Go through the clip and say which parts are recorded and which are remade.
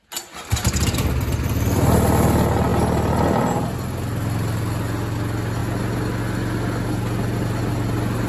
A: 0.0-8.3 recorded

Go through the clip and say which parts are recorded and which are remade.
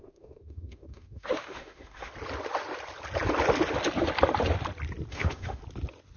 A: 0.0-2.1 remade; 2.1-5.1 recorded; 5.1-5.6 remade; 5.6-6.2 recorded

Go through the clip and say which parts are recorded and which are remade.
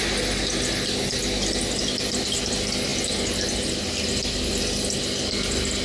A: 0.0-5.8 recorded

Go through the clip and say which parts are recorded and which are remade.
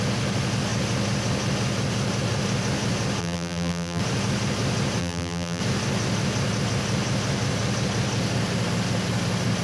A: 0.0-3.2 recorded; 3.2-4.0 remade; 4.0-5.0 recorded; 5.0-5.6 remade; 5.6-9.6 recorded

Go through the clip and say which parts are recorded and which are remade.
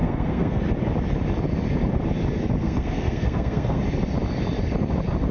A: 0.0-0.6 remade; 0.6-2.6 recorded; 2.6-3.8 remade; 3.8-5.3 recorded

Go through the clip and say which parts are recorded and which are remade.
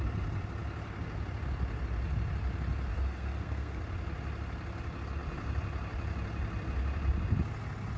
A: 0.0-2.9 recorded; 2.9-3.8 remade; 3.8-8.0 recorded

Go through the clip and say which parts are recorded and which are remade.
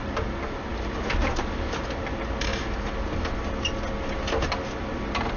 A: 0.0-5.4 recorded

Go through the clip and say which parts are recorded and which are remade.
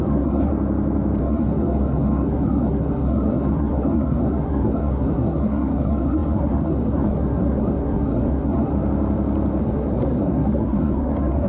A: 0.0-0.5 remade; 0.5-1.2 recorded; 1.2-8.7 remade; 8.7-9.6 recorded; 9.6-11.5 remade